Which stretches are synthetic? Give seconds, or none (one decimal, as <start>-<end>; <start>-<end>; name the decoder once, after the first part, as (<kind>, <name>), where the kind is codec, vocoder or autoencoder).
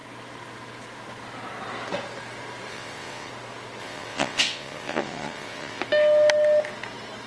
2.7-3.3 (vocoder, WaveNeXt); 3.8-5.8